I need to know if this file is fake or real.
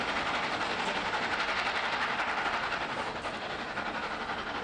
real